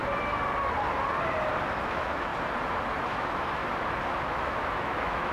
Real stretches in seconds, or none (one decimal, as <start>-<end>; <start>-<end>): 0.0-1.7; 2.3-3.1; 3.6-4.2